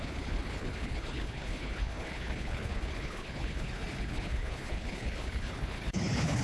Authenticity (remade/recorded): remade